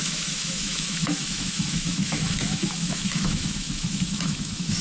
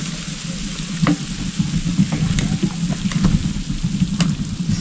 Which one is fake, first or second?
first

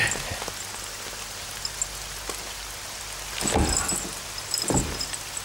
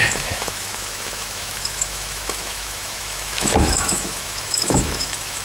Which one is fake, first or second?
second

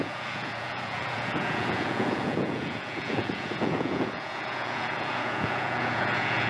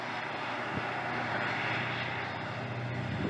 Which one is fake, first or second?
first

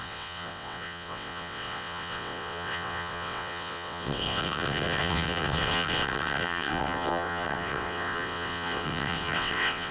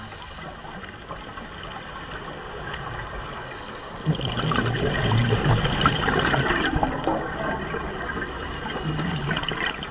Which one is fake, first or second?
first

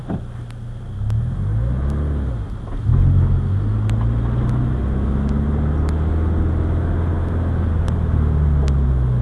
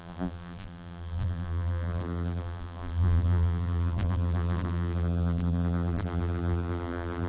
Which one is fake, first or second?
second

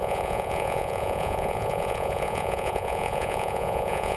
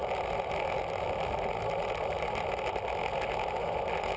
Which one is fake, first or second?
first